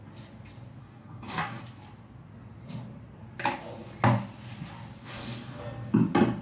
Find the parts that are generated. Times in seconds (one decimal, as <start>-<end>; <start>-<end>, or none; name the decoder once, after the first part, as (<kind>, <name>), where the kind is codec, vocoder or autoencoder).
0.8-1.6 (codec, DAC); 5.0-5.6